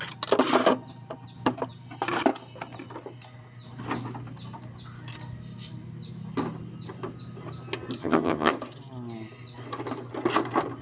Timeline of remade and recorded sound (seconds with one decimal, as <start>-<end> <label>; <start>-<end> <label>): 0.0-8.0 recorded; 8.0-8.5 remade; 8.5-10.8 recorded